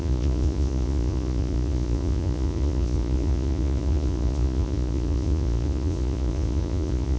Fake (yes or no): yes